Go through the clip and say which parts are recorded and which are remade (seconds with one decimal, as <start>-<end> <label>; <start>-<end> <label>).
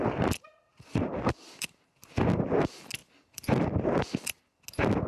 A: 0.0-0.7 recorded; 0.7-1.9 remade; 1.9-3.0 recorded; 3.0-4.4 remade; 4.4-5.1 recorded